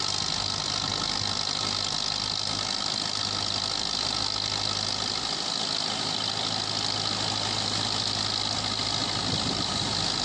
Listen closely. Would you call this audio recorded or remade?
recorded